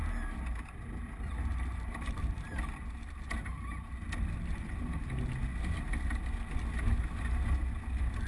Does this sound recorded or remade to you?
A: recorded